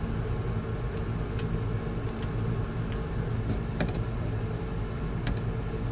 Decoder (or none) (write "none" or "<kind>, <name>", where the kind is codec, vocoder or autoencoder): none